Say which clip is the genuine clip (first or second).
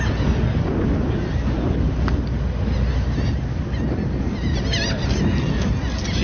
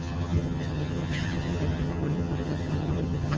first